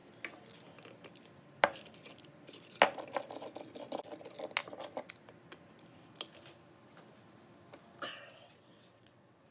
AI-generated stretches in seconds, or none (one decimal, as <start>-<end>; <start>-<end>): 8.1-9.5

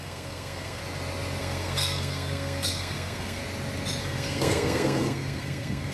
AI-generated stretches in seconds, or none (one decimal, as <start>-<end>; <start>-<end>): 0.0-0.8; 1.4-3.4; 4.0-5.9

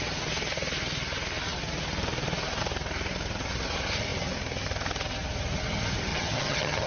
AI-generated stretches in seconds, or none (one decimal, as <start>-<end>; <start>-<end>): 6.1-6.9

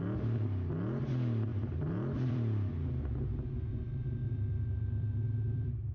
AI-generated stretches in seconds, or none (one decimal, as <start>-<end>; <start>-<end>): 1.5-2.7; 4.2-5.9